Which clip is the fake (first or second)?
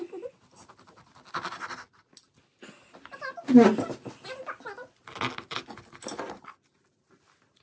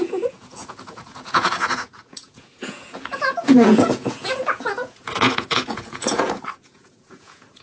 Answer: second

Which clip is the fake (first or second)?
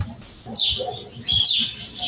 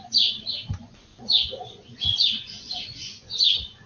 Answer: second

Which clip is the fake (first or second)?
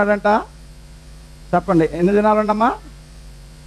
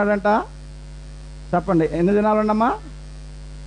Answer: first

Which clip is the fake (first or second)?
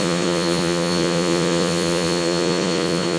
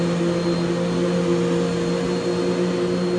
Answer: first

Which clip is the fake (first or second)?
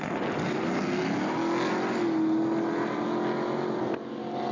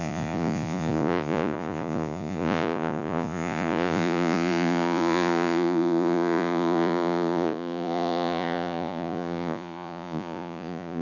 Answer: second